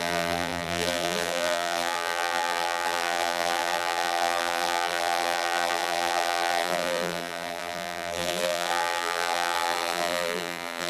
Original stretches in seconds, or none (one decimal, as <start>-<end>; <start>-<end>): none